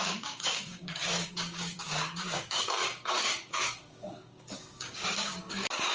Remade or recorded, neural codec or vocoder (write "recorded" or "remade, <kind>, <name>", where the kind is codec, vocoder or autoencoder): remade, codec, DAC